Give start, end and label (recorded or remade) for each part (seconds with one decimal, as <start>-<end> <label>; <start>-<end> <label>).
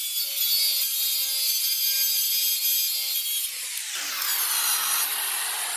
0.0-5.8 recorded